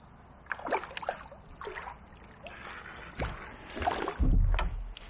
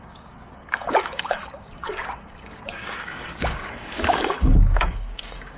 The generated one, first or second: second